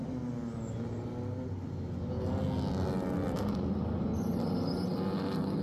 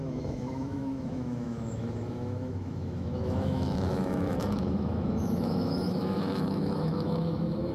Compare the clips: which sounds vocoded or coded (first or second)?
second